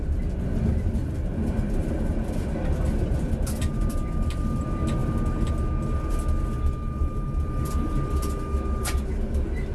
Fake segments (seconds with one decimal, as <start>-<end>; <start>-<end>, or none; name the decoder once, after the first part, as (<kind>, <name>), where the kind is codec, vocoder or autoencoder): none